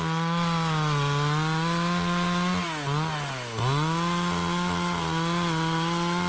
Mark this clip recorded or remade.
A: recorded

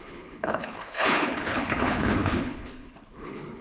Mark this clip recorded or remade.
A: remade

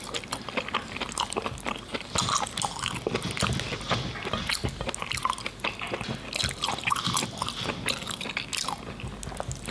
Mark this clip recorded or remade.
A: recorded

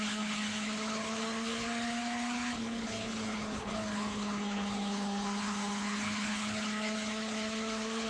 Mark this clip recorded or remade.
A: remade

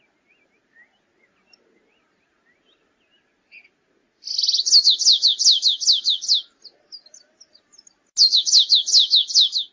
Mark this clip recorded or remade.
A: recorded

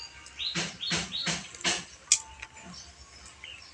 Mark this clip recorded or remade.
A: recorded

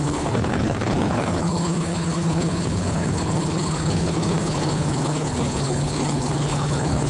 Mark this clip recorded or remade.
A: remade